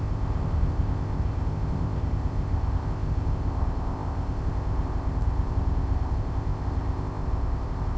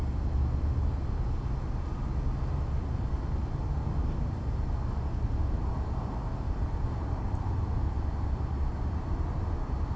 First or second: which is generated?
first